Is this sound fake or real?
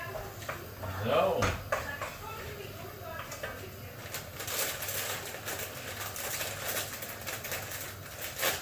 real